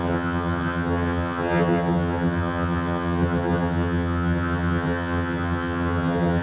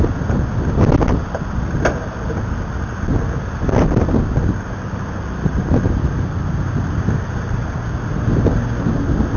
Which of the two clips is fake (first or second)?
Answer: first